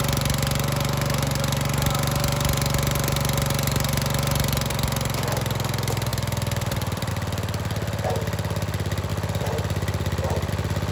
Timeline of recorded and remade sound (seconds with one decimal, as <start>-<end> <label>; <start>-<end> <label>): 0.0-6.1 recorded; 6.1-7.1 remade; 7.1-9.1 recorded; 9.1-10.5 remade; 10.5-10.9 recorded